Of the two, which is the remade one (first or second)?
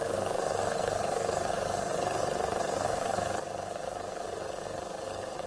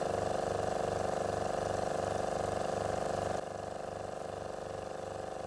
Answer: first